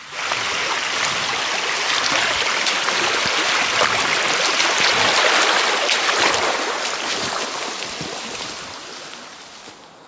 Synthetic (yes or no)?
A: no